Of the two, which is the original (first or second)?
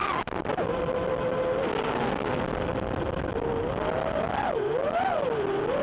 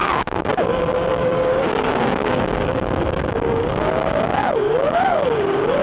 first